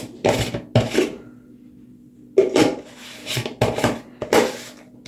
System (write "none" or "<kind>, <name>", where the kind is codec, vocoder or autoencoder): none